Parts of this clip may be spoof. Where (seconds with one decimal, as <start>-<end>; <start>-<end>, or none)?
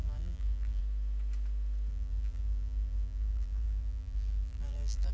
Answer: 0.0-0.8; 1.9-5.1